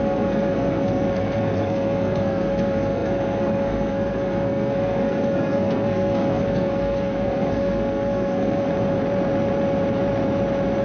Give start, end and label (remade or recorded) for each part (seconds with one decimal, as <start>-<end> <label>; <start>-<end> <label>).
0.0-8.7 remade; 8.7-10.8 recorded

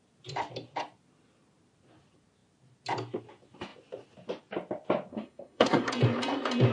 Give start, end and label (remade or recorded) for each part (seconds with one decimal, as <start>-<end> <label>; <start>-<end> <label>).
0.0-5.1 recorded; 5.1-5.9 remade; 5.9-6.7 recorded

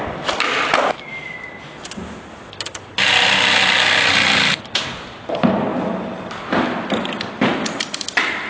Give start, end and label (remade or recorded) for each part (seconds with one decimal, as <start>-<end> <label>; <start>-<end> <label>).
0.0-8.5 recorded

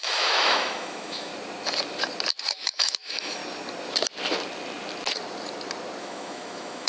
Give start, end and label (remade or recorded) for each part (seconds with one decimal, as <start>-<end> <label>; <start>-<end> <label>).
0.0-1.3 remade; 1.3-2.5 recorded; 2.5-3.4 remade; 3.4-6.0 recorded; 6.0-6.9 remade

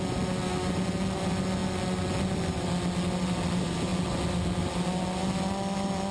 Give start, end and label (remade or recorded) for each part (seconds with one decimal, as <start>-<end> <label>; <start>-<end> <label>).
0.0-6.1 recorded